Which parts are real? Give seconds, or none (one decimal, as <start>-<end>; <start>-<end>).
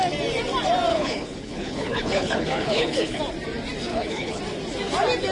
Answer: 0.0-0.9; 3.2-3.9; 4.4-5.3